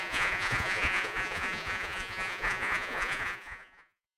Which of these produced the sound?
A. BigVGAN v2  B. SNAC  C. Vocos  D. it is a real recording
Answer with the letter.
C